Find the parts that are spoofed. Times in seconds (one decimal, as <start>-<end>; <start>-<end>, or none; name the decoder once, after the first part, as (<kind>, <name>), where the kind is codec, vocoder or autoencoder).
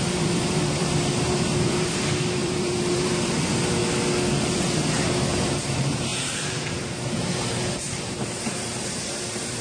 0.0-3.8 (vocoder, BigVGAN v2); 4.4-9.6